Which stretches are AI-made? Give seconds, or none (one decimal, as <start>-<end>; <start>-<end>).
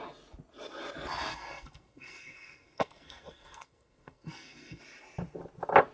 1.3-4.8